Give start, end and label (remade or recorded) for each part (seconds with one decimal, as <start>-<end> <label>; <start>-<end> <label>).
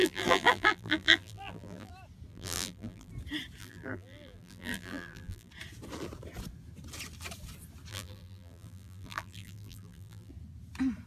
0.0-1.9 remade; 1.9-2.3 recorded; 2.3-3.1 remade; 3.1-3.6 recorded; 3.6-5.5 remade; 5.5-7.9 recorded; 7.9-10.3 remade; 10.3-11.1 recorded